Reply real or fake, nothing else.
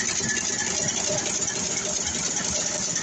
real